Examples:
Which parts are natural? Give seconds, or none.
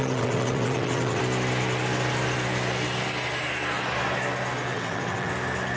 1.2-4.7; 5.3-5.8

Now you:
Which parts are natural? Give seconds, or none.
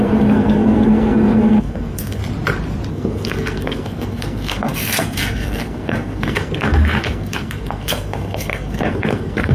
2.2-2.9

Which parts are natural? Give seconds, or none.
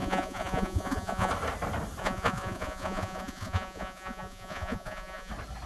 1.3-2.0; 5.3-5.7